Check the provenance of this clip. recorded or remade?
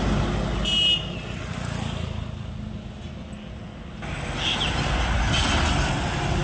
recorded